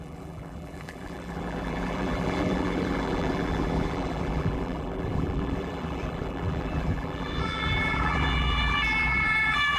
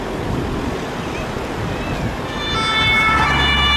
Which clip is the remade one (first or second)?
first